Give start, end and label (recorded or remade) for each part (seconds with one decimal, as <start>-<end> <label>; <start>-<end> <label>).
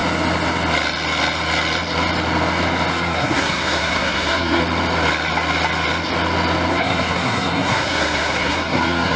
0.0-2.9 recorded; 2.9-4.6 remade; 4.6-6.7 recorded; 6.7-9.2 remade